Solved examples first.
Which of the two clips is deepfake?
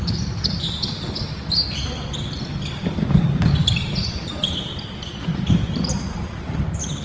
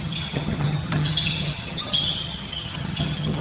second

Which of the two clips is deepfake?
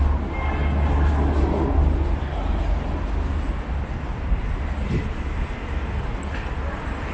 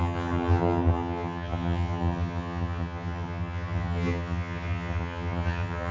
second